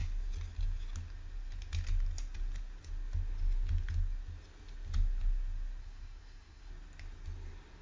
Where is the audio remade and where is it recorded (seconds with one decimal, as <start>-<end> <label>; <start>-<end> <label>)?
0.0-5.8 recorded; 5.8-6.7 remade; 6.7-7.8 recorded